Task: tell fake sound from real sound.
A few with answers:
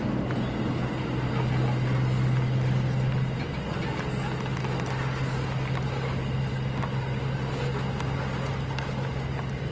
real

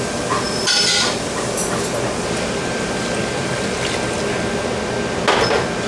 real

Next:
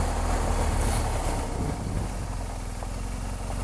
real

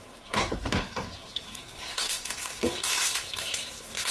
fake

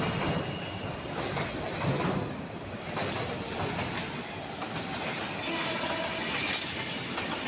real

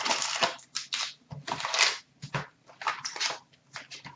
real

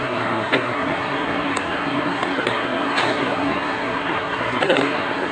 fake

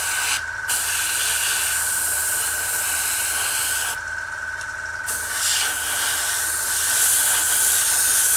real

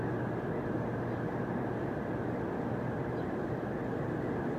real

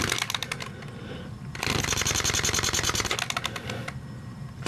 real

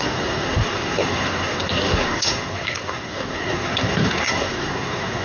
fake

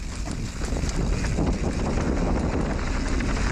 real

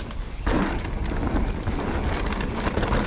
real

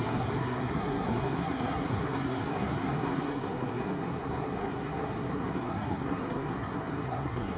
fake